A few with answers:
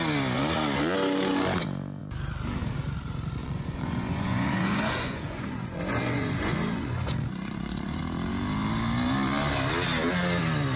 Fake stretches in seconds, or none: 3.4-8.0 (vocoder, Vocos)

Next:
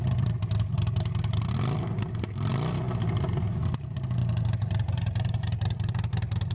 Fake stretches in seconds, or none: 4.2-5.9 (vocoder, BigVGAN v2)